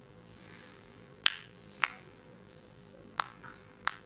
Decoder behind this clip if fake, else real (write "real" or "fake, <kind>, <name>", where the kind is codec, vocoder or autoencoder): fake, vocoder, BigVGAN v2